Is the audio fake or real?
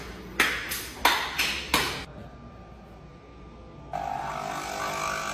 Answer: real